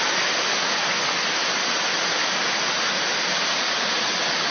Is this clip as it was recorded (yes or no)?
yes